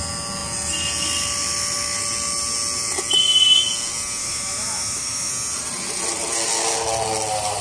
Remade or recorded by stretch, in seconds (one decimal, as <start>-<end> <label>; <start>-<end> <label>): 0.0-4.2 recorded; 4.2-5.3 remade; 5.3-7.6 recorded